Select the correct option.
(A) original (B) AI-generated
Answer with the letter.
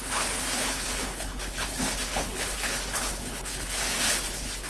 B